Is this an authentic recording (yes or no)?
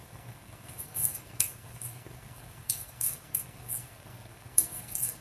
no